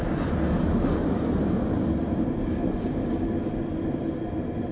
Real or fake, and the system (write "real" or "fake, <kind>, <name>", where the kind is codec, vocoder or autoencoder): real